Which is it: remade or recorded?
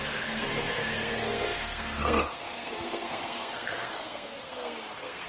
remade